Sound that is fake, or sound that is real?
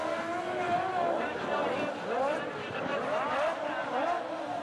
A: real